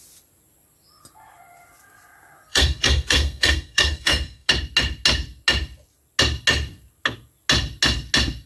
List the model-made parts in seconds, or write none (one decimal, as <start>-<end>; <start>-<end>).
2.5-4.5